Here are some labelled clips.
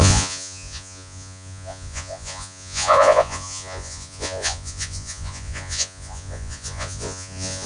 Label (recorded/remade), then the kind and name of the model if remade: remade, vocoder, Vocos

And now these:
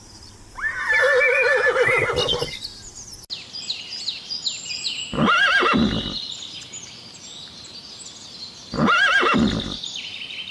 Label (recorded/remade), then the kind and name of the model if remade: recorded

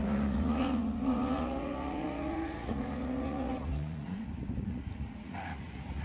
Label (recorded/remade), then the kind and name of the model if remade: remade, vocoder, Vocos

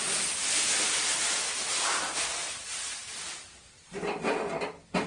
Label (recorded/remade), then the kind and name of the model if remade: recorded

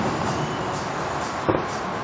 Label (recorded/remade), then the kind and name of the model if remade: recorded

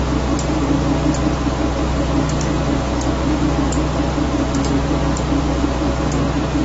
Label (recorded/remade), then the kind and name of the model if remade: recorded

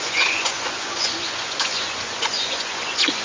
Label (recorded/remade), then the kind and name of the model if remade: remade, vocoder, Vocos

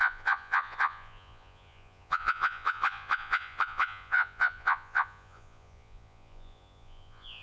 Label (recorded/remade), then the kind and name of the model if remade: remade, vocoder, Vocos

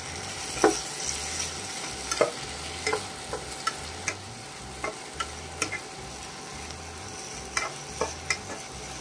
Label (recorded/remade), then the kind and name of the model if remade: recorded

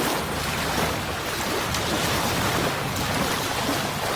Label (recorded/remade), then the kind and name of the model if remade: recorded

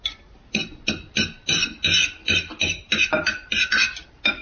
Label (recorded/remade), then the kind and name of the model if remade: recorded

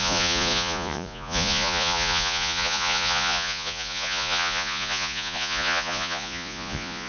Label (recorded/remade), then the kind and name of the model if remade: remade, vocoder, Vocos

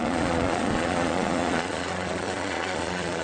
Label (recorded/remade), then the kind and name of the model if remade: remade, vocoder, Vocos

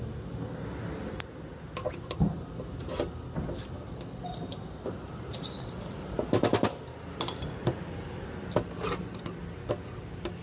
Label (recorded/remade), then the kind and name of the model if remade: recorded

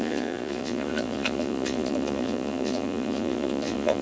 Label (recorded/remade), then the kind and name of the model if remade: remade, vocoder, Vocos